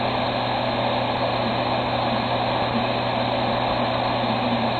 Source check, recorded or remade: recorded